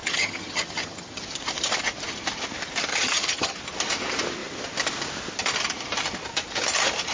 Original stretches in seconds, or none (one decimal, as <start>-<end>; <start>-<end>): 1.2-2.9; 3.6-7.1